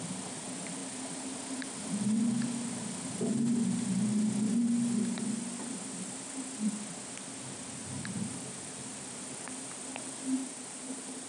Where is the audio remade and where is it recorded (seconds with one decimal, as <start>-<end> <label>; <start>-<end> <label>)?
0.0-10.4 recorded; 10.4-11.3 remade